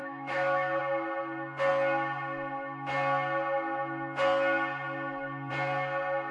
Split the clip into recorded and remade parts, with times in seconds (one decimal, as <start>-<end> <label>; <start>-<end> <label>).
0.0-0.8 remade; 0.8-6.3 recorded